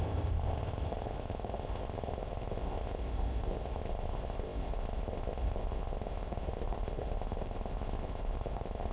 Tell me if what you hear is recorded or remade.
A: remade